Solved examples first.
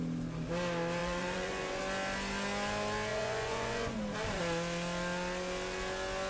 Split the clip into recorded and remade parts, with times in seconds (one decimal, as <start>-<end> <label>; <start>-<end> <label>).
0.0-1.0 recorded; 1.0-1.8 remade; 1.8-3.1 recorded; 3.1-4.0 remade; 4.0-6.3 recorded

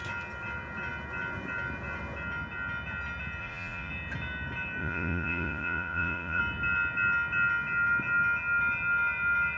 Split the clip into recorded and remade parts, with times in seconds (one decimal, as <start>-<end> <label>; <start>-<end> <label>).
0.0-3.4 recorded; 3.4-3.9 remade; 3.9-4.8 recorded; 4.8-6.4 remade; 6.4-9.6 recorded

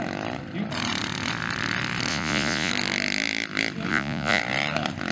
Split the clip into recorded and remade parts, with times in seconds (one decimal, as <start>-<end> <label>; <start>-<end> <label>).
0.0-2.1 recorded; 2.1-2.7 remade; 2.7-3.9 recorded; 3.9-4.4 remade; 4.4-5.1 recorded

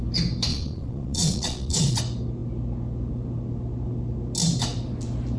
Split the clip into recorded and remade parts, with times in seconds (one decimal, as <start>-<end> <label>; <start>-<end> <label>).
0.0-0.5 recorded; 0.5-2.0 remade; 2.0-5.4 recorded